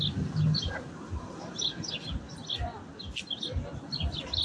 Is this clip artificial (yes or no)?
no